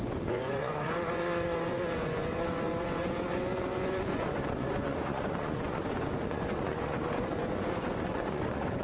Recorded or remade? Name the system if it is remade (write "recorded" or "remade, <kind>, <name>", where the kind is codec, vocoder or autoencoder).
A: remade, vocoder, Vocos